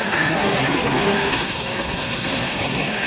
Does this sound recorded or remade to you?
remade